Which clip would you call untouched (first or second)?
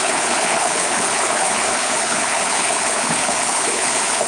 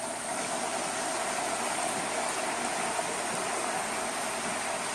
second